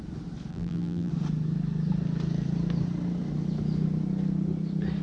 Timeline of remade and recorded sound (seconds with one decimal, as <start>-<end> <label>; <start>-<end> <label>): 0.0-0.5 recorded; 0.5-1.1 remade; 1.1-5.0 recorded